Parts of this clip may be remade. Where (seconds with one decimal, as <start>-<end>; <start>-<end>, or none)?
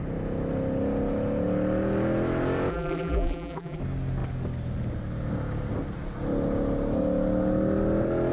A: 2.7-3.8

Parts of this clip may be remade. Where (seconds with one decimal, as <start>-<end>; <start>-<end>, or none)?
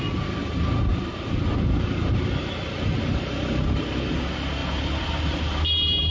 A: 0.4-4.1; 4.6-6.1